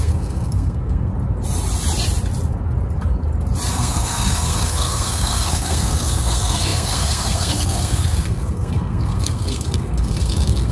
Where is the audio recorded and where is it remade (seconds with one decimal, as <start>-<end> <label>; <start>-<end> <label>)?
0.0-1.1 remade; 1.1-3.7 recorded; 3.7-10.7 remade